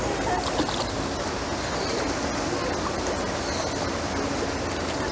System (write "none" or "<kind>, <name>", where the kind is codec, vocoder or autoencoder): none